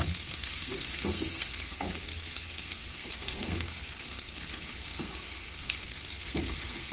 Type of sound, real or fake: fake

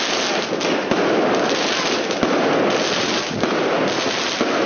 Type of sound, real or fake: real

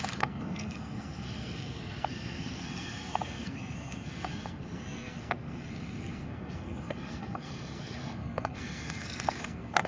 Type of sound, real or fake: fake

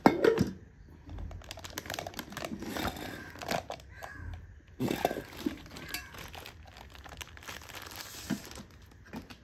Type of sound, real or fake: real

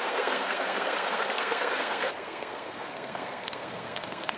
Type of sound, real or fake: fake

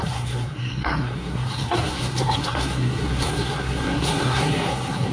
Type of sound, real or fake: fake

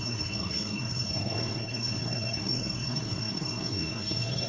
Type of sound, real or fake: fake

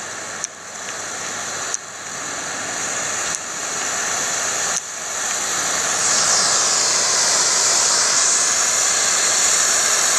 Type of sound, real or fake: real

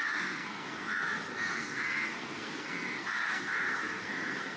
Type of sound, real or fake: fake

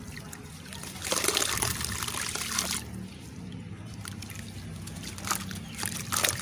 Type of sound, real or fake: real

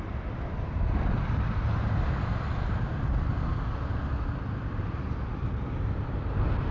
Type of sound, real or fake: real